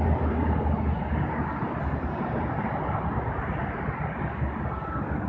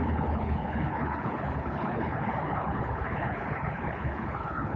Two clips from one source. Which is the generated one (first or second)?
second